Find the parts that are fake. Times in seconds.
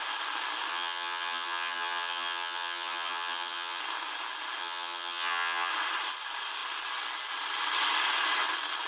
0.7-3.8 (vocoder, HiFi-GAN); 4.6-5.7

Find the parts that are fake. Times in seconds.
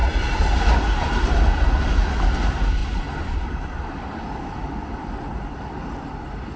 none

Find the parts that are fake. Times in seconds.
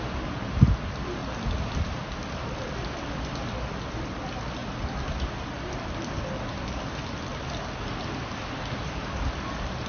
none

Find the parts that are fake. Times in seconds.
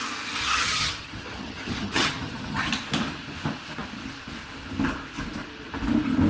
0.4-2.7 (vocoder, HiFi-GAN)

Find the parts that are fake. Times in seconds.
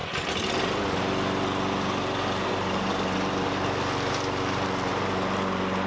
none